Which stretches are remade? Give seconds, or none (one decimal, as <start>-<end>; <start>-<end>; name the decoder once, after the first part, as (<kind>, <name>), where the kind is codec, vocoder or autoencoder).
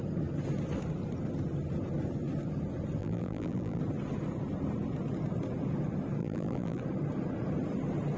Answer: 3.0-3.8 (vocoder, BigVGAN v2); 6.2-6.8